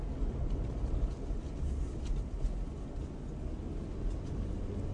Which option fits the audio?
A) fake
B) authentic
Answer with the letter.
B